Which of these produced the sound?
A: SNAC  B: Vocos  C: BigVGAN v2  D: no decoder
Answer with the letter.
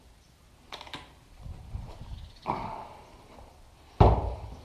D